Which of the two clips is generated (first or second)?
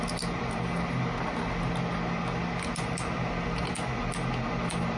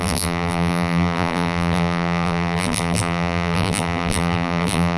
second